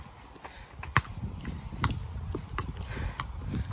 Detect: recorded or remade recorded